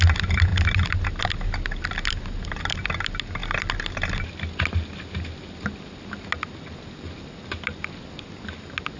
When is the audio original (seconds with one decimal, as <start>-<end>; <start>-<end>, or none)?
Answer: 0.0-9.0